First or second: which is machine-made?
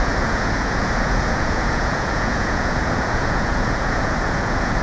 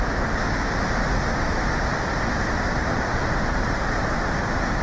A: first